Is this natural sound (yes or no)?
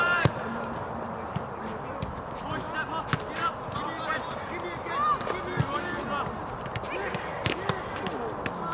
yes